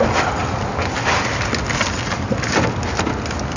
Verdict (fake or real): real